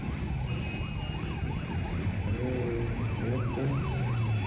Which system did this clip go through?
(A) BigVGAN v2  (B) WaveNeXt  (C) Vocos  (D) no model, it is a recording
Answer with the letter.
D